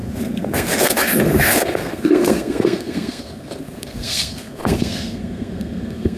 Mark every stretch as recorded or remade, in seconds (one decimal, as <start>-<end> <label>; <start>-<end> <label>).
0.0-6.2 remade